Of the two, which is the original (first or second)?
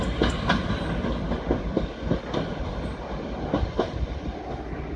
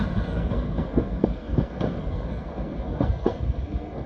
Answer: first